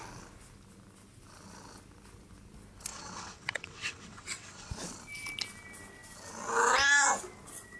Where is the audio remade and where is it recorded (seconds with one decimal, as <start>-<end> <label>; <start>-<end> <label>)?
0.0-2.9 recorded; 2.9-4.7 remade; 4.7-7.8 recorded